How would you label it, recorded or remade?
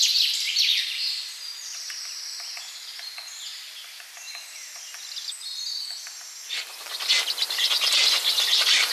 recorded